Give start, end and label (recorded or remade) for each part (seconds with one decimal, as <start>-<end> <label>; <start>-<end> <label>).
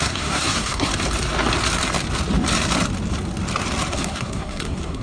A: 0.0-0.9 remade; 0.9-3.9 recorded; 3.9-5.0 remade